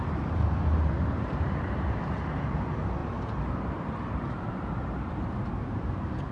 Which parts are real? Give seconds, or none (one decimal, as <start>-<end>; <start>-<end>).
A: none